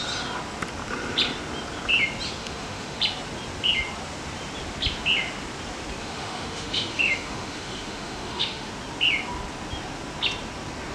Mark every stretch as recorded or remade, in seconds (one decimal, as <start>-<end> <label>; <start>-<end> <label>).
0.0-2.4 recorded; 2.4-3.0 remade; 3.0-6.0 recorded; 6.0-8.7 remade; 8.7-10.9 recorded